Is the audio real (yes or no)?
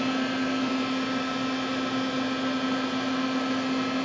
yes